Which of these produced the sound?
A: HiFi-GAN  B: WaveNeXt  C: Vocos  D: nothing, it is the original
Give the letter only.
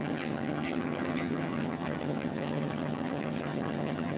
A